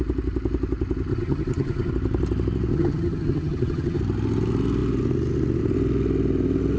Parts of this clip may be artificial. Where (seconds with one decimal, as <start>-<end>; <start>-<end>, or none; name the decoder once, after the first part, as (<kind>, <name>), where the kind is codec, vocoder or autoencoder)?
1.1-1.9 (vocoder, HiFi-GAN); 2.7-4.0